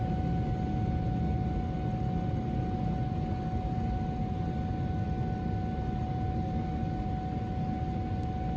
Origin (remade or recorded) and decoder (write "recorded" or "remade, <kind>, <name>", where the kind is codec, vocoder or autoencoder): recorded